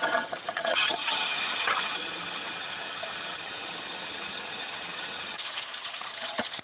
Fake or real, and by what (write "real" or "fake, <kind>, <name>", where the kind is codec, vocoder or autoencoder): fake, vocoder, HiFi-GAN